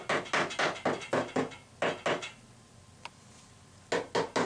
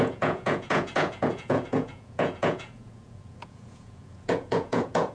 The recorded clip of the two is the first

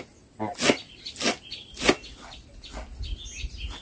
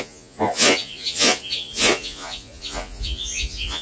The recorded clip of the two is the first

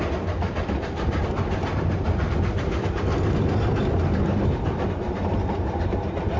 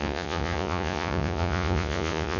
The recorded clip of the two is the first